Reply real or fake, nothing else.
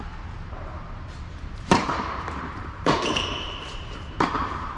fake